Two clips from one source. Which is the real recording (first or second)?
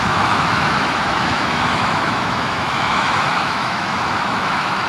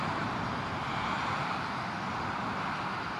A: second